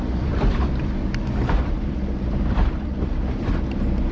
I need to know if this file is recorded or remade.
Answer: remade